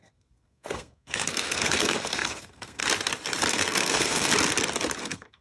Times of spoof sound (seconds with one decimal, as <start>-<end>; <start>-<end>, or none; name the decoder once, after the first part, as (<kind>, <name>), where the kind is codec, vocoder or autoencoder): 0.0-2.8 (codec, SNAC); 3.5-4.3; 5.0-5.4